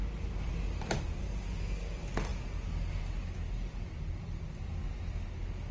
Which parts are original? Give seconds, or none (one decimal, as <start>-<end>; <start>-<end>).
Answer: 0.0-5.7